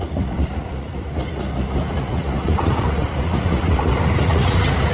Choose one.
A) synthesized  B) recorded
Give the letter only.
A